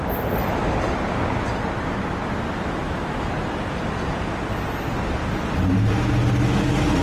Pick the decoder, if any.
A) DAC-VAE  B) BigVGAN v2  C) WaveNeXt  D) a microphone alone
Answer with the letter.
D